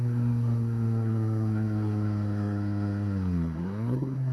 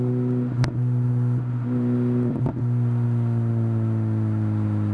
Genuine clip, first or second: second